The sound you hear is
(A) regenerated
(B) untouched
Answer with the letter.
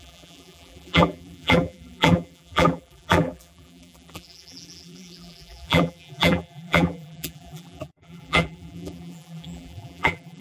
A